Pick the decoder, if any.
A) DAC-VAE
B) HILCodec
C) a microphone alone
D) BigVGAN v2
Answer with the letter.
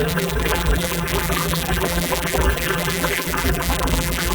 D